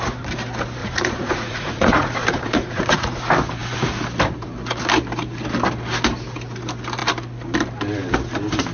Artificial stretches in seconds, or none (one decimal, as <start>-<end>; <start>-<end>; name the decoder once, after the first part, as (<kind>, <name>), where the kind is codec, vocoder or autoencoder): 0.8-3.2 (vocoder, Vocos)